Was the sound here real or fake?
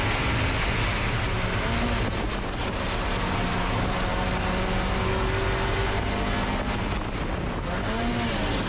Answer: real